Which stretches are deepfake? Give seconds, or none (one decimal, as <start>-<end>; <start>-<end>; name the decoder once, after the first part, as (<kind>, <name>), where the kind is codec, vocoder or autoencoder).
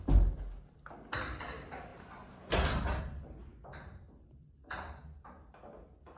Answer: none